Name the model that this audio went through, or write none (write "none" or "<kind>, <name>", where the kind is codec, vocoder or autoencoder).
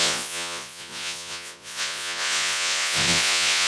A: vocoder, Vocos